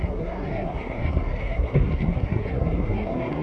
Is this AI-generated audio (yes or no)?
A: yes